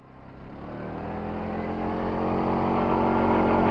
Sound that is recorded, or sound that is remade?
recorded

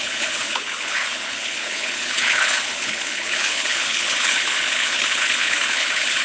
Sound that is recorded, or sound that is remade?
remade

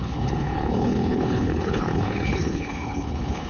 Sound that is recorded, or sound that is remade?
remade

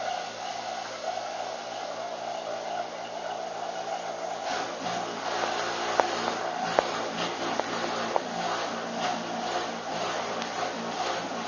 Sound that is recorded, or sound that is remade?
recorded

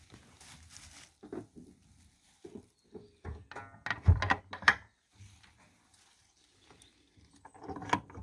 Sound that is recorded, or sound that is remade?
recorded